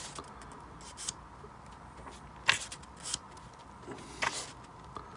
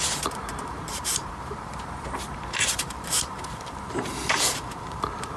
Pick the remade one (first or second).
second